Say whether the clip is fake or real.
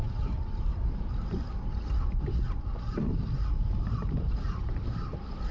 fake